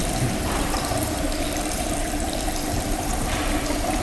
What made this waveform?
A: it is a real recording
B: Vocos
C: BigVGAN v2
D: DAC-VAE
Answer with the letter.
C